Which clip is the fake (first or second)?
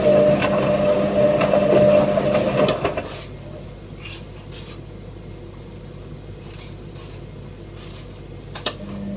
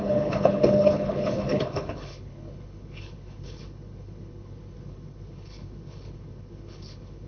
second